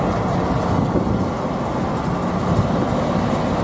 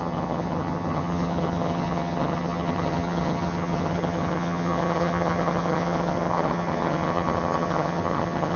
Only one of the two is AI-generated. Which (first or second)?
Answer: second